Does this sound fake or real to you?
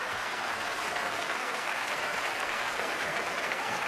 fake